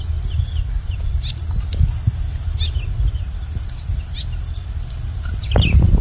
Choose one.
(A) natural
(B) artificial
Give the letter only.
A